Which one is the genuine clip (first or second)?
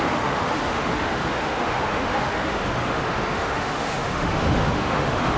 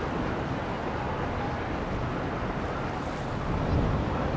second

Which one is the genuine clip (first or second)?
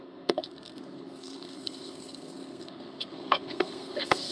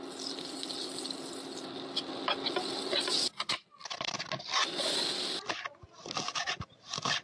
second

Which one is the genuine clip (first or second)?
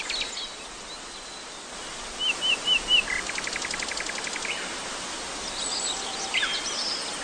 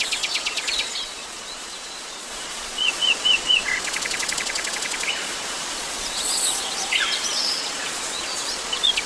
first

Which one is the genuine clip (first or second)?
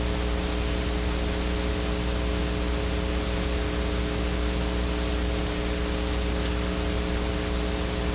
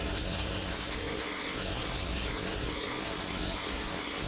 first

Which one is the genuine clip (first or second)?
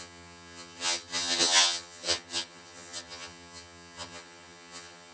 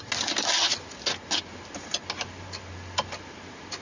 second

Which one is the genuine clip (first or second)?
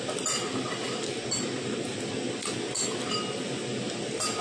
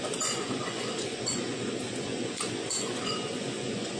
first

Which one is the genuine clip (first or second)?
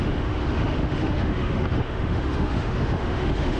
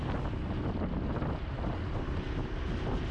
second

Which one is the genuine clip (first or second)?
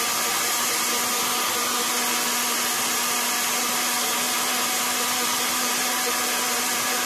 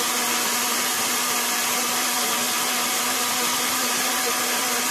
first